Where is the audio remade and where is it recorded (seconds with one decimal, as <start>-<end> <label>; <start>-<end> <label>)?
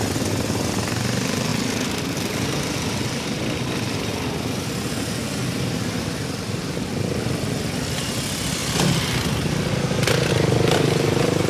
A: 0.0-1.5 remade; 1.5-2.2 recorded; 2.2-4.1 remade; 4.1-4.9 recorded; 4.9-8.6 remade; 8.6-10.3 recorded; 10.3-11.5 remade